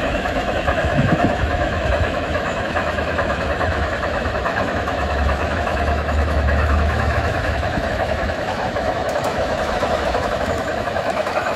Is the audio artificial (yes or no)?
yes